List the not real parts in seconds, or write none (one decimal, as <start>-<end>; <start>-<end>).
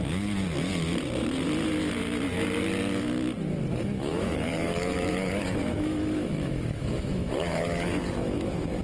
3.7-8.8